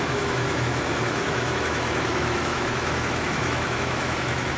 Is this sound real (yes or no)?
no